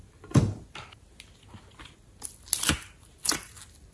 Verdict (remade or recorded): recorded